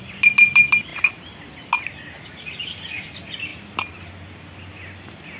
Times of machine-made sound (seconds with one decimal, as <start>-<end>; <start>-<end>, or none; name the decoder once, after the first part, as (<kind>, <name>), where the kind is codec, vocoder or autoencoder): none

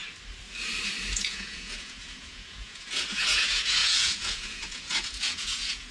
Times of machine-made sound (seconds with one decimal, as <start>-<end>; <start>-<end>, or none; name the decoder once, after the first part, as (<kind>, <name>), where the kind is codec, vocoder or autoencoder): 1.1-5.9 (vocoder, Vocos)

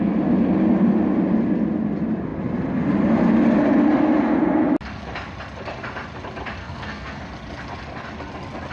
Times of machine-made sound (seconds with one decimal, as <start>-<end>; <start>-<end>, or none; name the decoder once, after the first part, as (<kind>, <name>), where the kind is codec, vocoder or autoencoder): 6.6-7.2 (codec, SNAC)